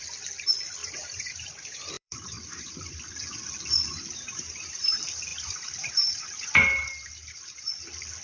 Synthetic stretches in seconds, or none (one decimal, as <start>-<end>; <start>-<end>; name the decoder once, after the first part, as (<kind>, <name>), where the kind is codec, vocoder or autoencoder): 0.8-3.0 (vocoder, BigVGAN v2); 4.3-4.8; 5.3-7.7